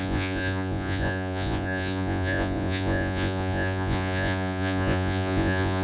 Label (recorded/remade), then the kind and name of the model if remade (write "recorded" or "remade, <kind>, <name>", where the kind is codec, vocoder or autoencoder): remade, vocoder, Vocos